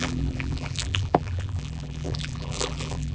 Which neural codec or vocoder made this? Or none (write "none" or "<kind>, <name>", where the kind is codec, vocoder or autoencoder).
vocoder, BigVGAN v2